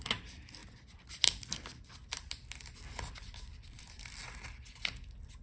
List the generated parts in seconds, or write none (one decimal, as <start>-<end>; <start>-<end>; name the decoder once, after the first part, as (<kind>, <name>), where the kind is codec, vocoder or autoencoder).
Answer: 0.0-4.2 (vocoder, BigVGAN v2)